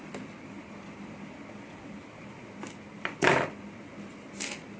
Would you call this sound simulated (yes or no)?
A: no